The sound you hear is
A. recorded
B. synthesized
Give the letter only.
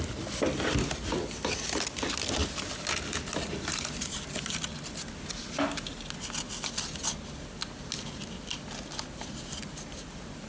A